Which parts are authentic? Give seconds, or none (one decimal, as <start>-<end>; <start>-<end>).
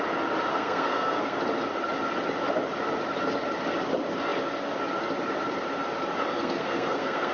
0.0-0.5; 1.4-6.3